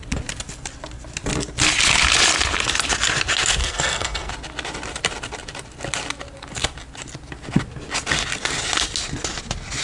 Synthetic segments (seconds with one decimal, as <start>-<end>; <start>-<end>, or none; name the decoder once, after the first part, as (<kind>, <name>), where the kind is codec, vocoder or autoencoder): 3.6-4.3 (codec, SNAC)